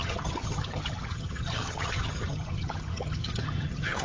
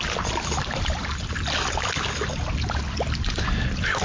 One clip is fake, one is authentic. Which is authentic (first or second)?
second